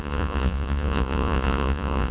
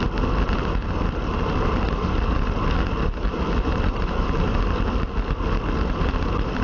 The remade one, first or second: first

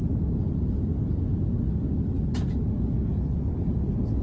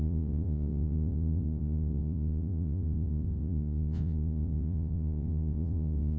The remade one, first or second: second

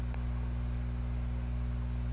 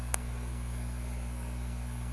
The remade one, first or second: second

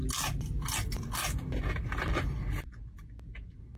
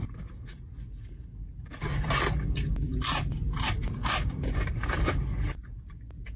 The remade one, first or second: second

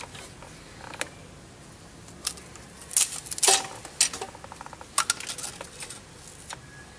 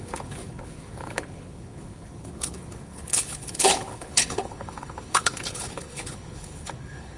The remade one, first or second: second